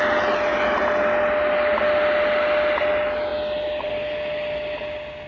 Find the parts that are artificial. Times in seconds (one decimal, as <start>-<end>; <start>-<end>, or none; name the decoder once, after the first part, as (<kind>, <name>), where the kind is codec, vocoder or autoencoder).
none